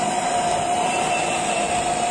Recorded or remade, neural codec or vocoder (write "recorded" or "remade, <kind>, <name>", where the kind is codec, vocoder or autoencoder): recorded